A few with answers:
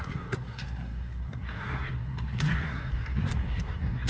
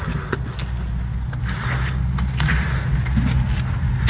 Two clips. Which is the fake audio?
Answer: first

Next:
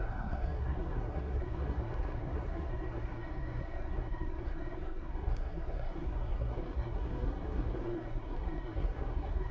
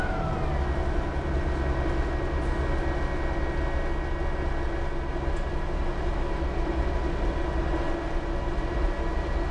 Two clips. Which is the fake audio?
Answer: first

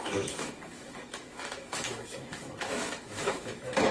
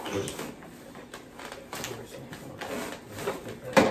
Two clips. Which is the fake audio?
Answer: first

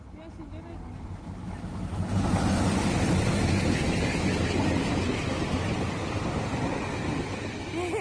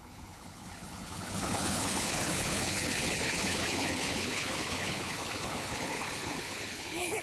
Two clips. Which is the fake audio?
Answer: second